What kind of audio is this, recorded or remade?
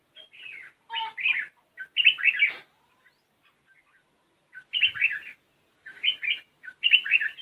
recorded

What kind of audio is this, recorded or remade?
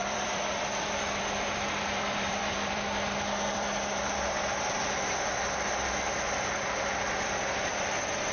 remade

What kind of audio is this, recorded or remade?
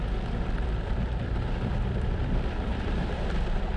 remade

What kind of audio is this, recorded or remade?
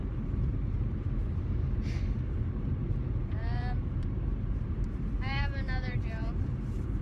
remade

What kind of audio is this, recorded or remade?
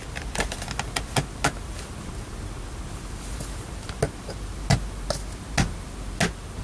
recorded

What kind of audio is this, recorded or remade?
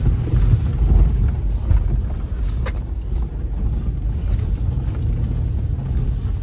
recorded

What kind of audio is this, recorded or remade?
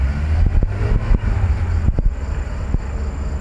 recorded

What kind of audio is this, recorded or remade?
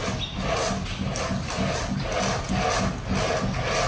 recorded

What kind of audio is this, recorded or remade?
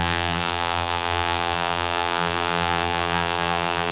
remade